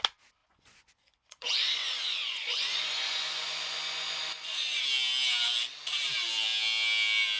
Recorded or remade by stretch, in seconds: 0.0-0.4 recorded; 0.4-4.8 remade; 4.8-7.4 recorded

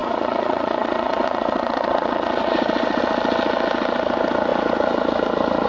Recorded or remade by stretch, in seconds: 0.0-3.0 remade; 3.0-5.7 recorded

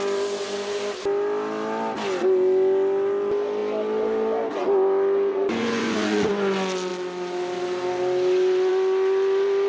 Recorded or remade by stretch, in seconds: 0.0-5.3 recorded; 5.3-6.3 remade; 6.3-9.7 recorded

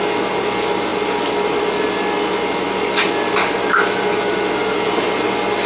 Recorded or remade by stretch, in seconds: 0.0-5.7 recorded

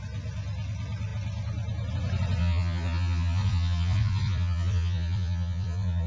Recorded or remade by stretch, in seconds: 0.0-2.4 recorded; 2.4-6.1 remade